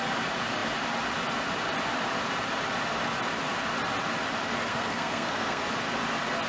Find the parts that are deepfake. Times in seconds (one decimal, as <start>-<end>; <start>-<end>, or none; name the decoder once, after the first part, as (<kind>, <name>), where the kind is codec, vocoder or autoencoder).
4.7-5.6 (codec, SNAC)